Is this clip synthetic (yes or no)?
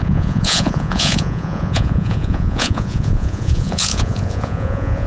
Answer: yes